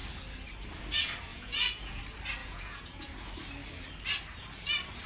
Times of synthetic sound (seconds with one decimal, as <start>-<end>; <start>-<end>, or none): 1.3-2.0; 2.4-3.1